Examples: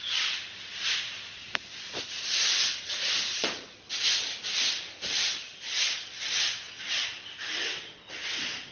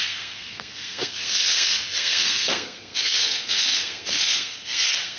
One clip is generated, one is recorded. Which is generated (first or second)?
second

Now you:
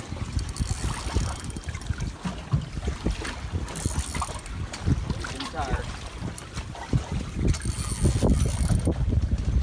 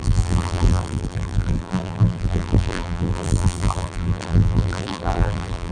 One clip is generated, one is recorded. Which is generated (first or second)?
second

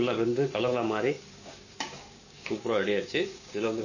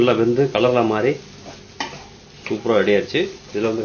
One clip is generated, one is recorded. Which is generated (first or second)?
first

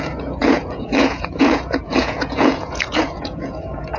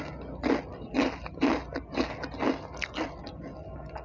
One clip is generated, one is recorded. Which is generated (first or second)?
first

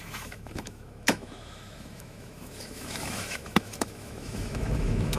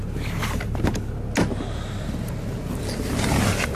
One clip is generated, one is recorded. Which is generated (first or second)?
first